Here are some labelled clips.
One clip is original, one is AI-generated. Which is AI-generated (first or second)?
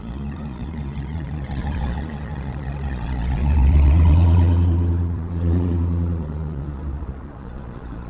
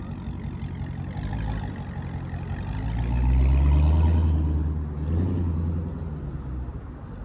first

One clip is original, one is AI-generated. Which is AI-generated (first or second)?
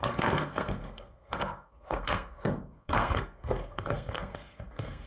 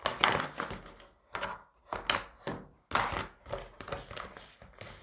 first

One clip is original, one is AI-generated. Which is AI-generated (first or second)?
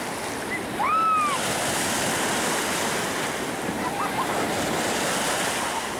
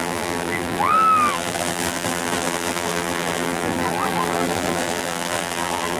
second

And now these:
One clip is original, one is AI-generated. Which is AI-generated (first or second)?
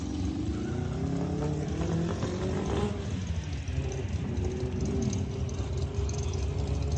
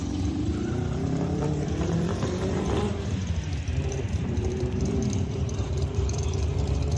second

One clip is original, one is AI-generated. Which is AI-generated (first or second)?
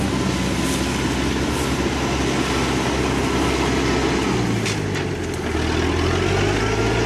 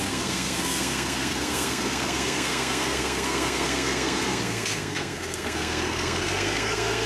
second